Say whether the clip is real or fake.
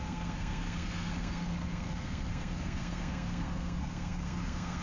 fake